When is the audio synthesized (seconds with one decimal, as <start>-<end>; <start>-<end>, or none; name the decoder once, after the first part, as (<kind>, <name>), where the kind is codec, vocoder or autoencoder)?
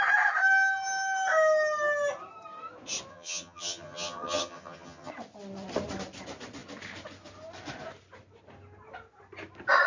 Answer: 3.1-5.1 (vocoder, HiFi-GAN)